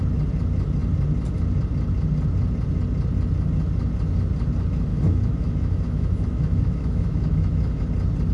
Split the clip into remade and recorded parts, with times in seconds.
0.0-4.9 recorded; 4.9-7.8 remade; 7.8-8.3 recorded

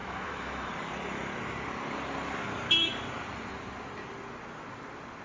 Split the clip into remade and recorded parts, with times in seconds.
0.0-0.7 remade; 0.7-5.2 recorded

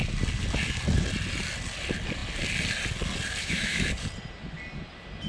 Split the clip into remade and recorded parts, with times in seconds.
0.0-3.4 recorded; 3.4-3.9 remade; 3.9-5.3 recorded

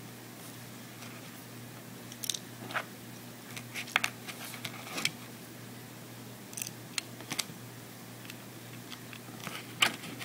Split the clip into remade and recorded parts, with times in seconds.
0.0-10.2 recorded

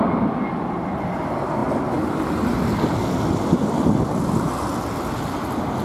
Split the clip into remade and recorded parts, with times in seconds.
0.0-5.8 recorded

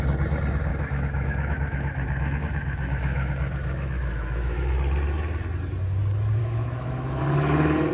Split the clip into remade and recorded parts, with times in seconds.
0.0-0.7 recorded; 0.7-4.7 remade; 4.7-6.4 recorded; 6.4-7.2 remade; 7.2-7.9 recorded

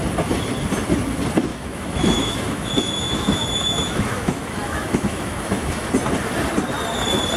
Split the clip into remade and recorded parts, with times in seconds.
0.0-1.5 recorded; 1.5-5.9 remade; 5.9-7.4 recorded

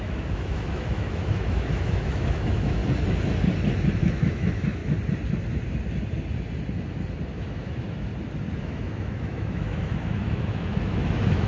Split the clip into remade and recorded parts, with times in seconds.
0.0-2.8 remade; 2.8-4.0 recorded; 4.0-4.8 remade; 4.8-7.4 recorded; 7.4-8.1 remade; 8.1-8.6 recorded; 8.6-11.5 remade